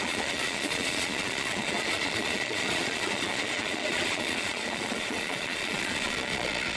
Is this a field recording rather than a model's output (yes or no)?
no